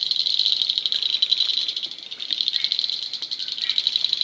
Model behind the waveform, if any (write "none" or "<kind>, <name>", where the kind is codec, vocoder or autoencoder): none